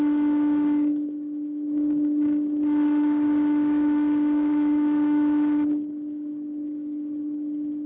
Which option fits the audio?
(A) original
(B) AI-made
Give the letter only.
B